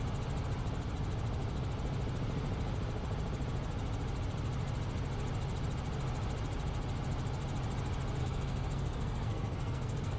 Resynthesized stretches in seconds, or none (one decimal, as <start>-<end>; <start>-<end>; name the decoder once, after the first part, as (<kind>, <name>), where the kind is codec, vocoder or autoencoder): 8.2-10.2 (codec, SNAC)